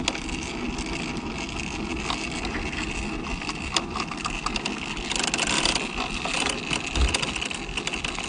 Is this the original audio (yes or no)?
yes